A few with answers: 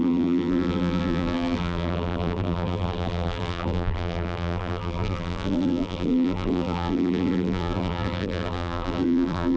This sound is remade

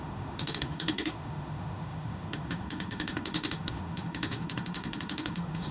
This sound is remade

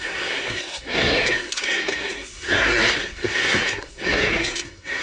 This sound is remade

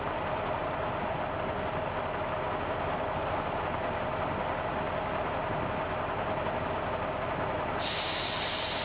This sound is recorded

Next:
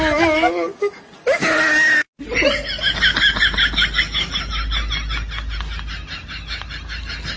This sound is recorded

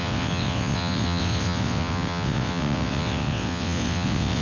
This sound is remade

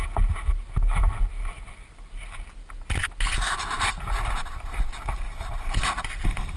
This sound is recorded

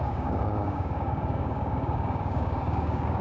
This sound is remade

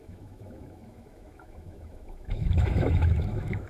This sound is remade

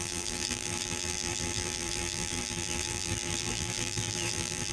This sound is remade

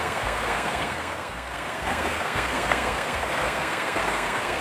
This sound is remade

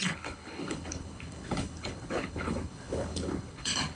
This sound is remade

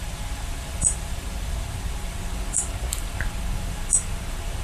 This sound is remade